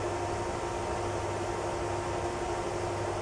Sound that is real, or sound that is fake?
real